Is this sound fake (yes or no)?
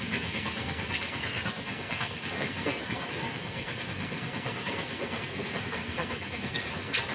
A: yes